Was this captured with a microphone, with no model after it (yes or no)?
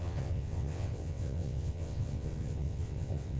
no